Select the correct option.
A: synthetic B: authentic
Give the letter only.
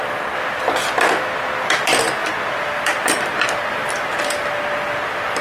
B